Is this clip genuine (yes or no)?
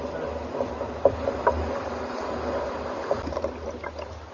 yes